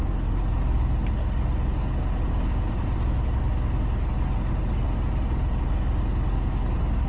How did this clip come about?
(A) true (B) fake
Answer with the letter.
A